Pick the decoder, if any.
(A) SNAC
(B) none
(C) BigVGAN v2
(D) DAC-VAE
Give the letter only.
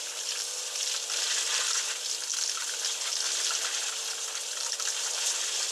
B